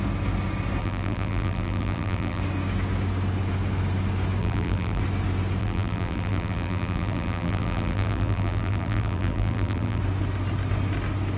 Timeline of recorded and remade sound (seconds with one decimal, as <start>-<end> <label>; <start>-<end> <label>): 0.0-0.8 recorded; 0.8-2.4 remade; 2.4-4.4 recorded; 4.4-5.0 remade; 5.0-5.6 recorded; 5.6-10.0 remade; 10.0-11.4 recorded